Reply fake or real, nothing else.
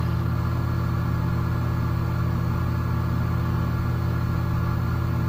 real